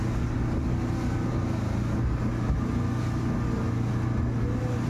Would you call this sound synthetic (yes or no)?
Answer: no